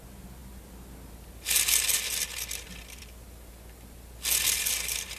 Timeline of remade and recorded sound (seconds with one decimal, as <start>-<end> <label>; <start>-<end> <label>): 0.0-5.2 recorded